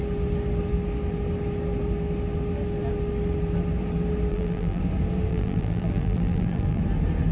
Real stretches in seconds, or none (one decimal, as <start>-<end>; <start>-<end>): 0.0-4.3; 4.8-5.3; 6.8-7.3